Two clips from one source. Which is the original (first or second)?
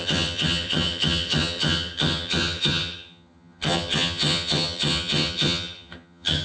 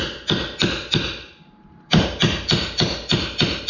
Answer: second